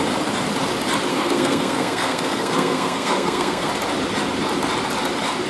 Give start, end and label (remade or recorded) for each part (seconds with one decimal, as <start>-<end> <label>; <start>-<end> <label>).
0.0-1.1 recorded; 1.1-3.7 remade; 3.7-5.5 recorded